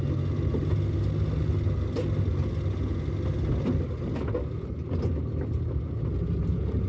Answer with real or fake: real